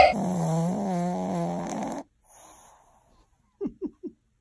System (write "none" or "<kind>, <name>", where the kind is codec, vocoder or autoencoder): none